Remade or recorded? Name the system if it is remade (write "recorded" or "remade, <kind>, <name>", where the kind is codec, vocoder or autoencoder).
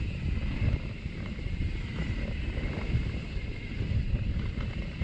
recorded